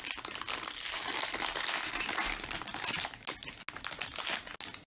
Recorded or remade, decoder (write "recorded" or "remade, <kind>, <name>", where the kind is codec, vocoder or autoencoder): recorded